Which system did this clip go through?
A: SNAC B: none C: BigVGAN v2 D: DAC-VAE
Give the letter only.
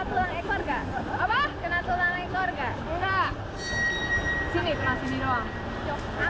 B